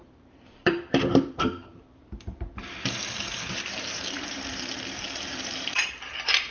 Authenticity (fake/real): fake